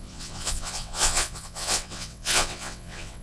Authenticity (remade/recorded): remade